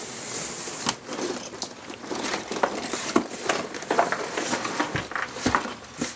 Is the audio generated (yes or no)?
yes